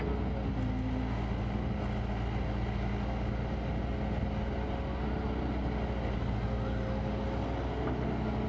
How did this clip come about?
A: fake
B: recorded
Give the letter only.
B